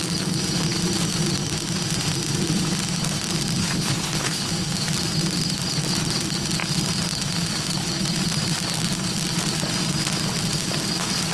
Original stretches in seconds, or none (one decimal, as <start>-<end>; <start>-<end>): 0.0-3.6; 4.5-11.3